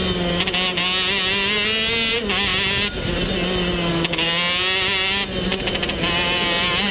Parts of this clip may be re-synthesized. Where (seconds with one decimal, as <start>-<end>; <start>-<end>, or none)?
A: none

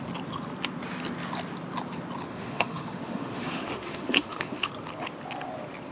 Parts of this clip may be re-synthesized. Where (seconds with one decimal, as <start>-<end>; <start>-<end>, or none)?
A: 2.3-4.7

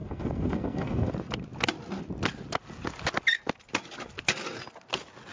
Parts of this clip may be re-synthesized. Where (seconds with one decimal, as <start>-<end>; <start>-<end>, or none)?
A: 0.0-1.1

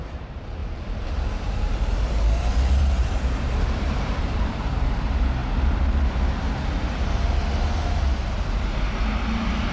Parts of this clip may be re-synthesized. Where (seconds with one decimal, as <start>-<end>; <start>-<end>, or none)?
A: 0.0-5.4

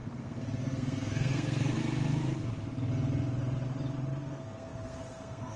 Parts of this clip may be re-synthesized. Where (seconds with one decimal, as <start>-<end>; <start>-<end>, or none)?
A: 0.0-1.8; 4.2-5.6

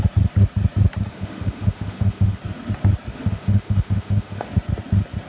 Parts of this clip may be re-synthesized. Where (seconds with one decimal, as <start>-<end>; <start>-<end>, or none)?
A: 1.1-2.4; 3.1-4.5

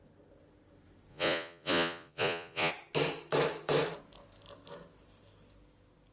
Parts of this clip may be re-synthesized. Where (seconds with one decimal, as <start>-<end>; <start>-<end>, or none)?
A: 1.1-2.7

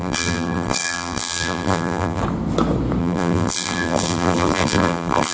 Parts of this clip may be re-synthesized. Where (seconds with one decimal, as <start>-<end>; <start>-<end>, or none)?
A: 0.0-2.2; 3.0-5.3